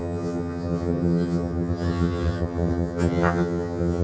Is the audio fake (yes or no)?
yes